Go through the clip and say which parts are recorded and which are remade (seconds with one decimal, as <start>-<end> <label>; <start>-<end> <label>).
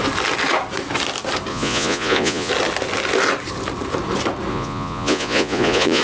0.0-1.5 recorded; 1.5-2.5 remade; 2.5-4.5 recorded; 4.5-6.0 remade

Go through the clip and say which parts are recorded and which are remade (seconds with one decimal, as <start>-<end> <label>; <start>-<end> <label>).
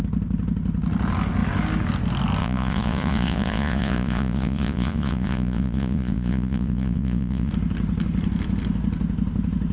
0.0-2.4 recorded; 2.4-7.5 remade; 7.5-9.7 recorded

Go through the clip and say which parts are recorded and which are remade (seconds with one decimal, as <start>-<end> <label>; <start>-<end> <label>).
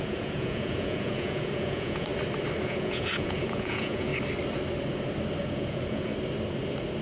0.0-2.1 remade; 2.1-2.6 recorded; 2.6-4.1 remade; 4.1-5.4 recorded; 5.4-6.1 remade; 6.1-7.0 recorded